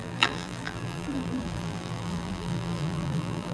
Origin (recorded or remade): remade